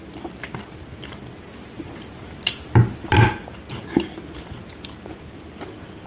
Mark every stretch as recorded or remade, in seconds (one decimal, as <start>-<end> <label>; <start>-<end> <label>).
0.0-6.1 recorded